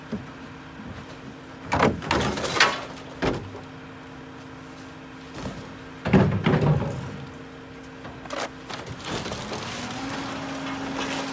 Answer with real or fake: real